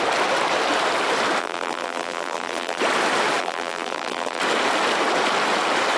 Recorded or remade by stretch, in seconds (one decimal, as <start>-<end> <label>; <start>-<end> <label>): 0.0-1.4 recorded; 1.4-2.8 remade; 2.8-3.4 recorded; 3.4-4.4 remade; 4.4-6.0 recorded